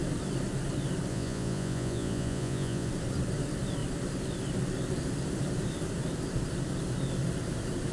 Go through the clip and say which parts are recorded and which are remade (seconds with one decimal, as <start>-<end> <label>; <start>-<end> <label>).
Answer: 0.0-1.1 recorded; 1.1-2.9 remade; 2.9-7.9 recorded